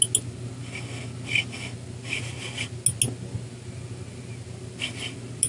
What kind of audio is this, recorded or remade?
recorded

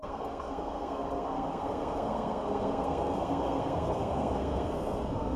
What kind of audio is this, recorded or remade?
remade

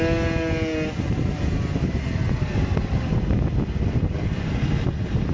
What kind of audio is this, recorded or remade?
recorded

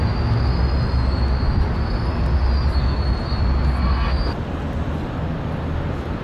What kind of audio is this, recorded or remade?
recorded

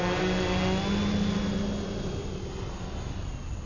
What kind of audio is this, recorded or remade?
recorded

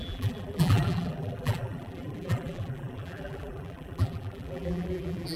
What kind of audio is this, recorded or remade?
remade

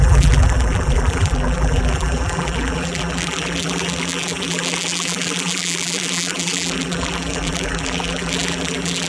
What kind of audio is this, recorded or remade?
remade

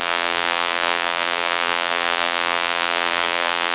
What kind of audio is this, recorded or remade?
remade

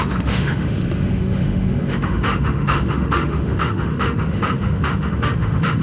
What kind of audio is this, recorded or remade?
remade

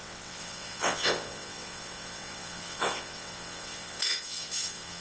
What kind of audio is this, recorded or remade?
remade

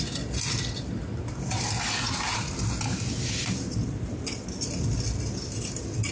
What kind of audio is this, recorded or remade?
recorded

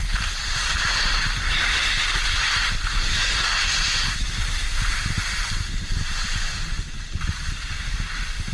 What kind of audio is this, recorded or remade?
recorded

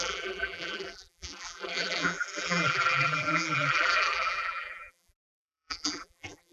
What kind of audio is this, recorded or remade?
remade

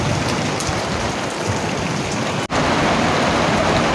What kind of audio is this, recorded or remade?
recorded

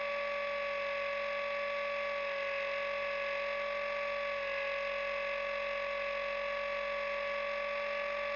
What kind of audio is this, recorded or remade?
recorded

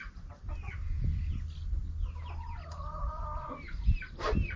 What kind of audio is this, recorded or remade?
recorded